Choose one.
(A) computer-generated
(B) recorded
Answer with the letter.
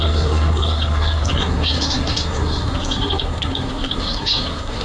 A